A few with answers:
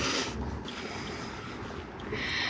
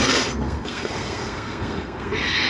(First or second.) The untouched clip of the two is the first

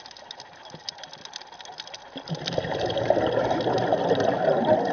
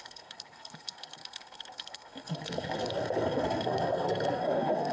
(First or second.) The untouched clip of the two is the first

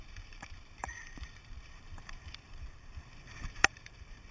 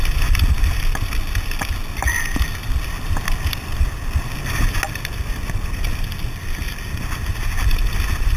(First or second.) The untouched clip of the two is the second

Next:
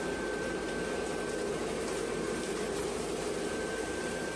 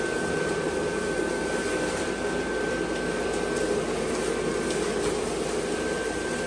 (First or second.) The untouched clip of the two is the second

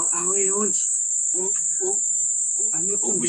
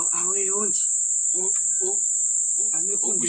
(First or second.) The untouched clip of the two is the second